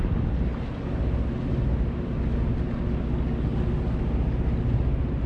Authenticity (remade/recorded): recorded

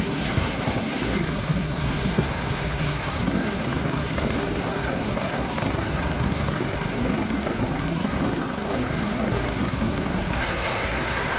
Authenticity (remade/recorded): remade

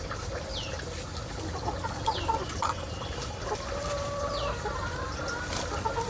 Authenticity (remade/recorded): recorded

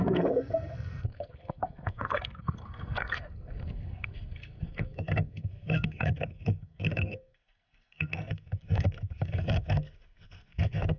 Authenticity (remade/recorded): remade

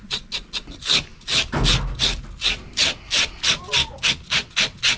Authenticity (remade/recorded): recorded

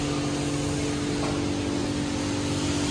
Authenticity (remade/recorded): recorded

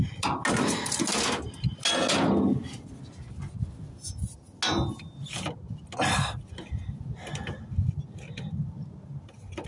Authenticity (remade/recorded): recorded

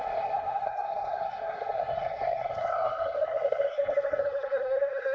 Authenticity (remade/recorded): remade